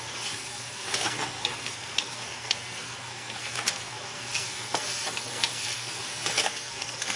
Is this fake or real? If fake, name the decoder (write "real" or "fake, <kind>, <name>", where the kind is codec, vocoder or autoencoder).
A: fake, codec, SNAC